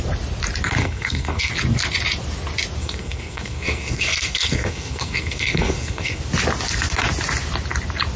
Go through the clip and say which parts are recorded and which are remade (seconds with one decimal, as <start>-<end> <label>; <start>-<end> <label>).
0.0-0.8 recorded; 0.8-1.5 remade; 1.5-2.8 recorded; 2.8-6.2 remade; 6.2-8.2 recorded